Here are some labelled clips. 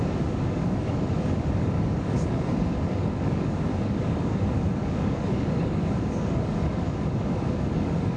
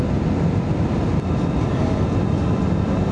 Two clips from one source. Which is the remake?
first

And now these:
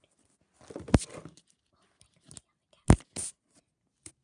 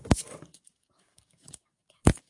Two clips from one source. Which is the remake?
second